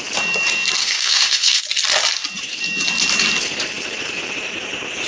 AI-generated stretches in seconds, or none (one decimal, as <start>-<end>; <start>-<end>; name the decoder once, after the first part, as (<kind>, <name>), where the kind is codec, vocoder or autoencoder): 0.8-1.6 (autoencoder, DAC-VAE)